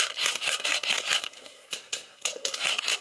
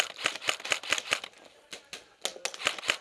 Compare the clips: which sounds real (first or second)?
second